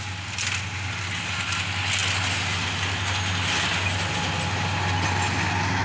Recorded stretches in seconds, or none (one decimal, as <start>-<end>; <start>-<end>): 0.0-5.8